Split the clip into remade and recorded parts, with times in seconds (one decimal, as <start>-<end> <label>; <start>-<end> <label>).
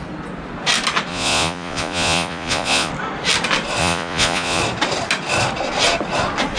0.0-1.1 recorded; 1.1-2.9 remade; 2.9-3.8 recorded; 3.8-4.6 remade; 4.6-6.6 recorded